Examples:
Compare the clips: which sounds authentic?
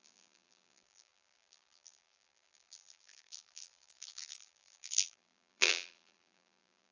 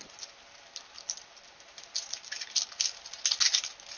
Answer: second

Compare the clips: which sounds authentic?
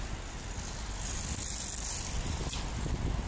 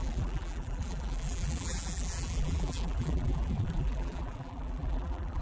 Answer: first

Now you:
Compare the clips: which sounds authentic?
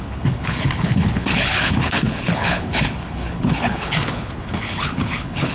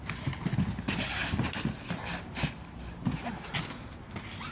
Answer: second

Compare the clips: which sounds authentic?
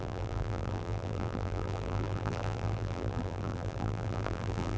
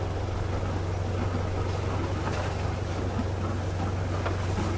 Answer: second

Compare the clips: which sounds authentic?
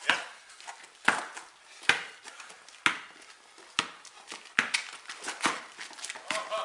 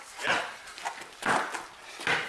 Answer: first